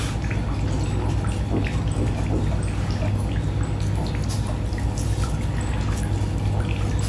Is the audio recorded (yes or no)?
yes